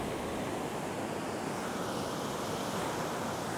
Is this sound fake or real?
real